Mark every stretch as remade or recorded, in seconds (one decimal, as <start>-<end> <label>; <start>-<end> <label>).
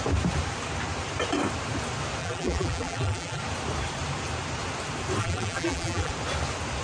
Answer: 0.0-2.2 recorded; 2.2-3.4 remade; 3.4-5.2 recorded; 5.2-6.1 remade; 6.1-6.8 recorded